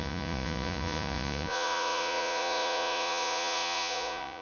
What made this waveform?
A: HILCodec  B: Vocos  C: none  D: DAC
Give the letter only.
B